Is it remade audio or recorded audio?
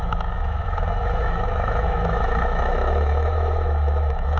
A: remade